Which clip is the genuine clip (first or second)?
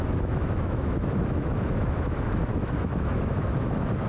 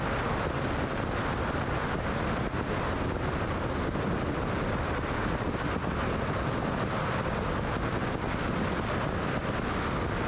second